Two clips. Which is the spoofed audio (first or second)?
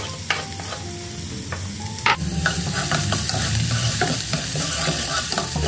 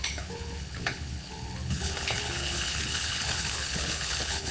second